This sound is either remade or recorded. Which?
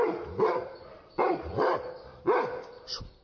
remade